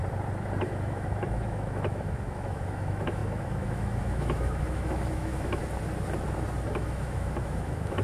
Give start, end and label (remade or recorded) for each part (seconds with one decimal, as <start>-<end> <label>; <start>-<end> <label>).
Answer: 0.0-0.6 recorded; 0.6-5.6 remade; 5.6-6.7 recorded; 6.7-8.0 remade